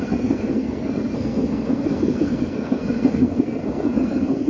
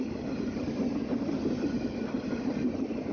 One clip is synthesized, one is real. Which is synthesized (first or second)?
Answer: first